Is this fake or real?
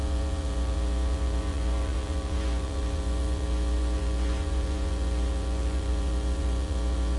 fake